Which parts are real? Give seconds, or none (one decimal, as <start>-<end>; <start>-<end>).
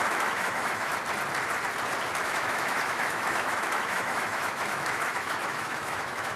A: 0.9-2.2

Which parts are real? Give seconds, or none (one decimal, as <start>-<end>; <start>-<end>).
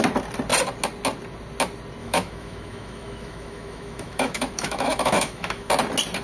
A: 0.0-2.0; 5.7-6.2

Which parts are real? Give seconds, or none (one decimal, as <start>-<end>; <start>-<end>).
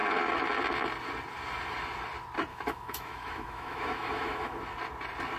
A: 0.0-2.5; 4.6-5.4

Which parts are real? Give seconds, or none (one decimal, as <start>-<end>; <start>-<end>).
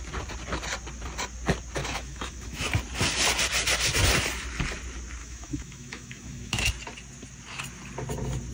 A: 0.0-1.8; 2.7-5.2; 6.7-8.5